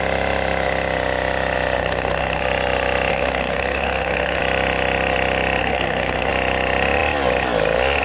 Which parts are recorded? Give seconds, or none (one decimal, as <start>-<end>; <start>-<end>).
0.0-1.8; 2.4-3.1; 4.4-5.6; 6.3-8.0